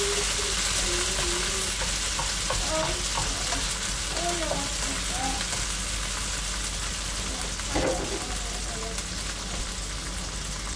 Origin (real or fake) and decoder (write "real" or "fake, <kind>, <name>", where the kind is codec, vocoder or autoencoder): real